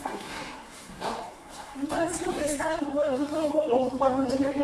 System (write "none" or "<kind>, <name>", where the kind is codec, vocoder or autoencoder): codec, SNAC